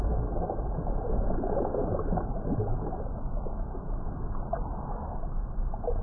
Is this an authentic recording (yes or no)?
yes